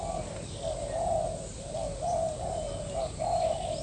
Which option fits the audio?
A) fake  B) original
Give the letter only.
B